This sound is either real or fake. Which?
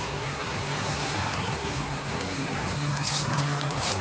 fake